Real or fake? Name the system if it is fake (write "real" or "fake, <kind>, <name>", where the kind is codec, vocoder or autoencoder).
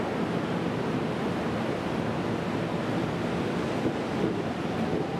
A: real